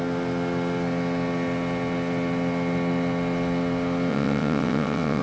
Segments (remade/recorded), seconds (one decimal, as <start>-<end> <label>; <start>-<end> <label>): 0.0-4.1 recorded; 4.1-5.2 remade